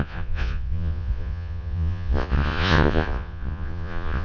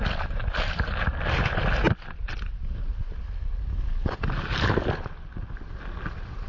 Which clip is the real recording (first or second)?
second